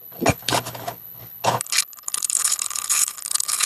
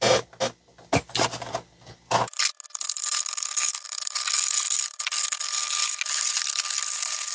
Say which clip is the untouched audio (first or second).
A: second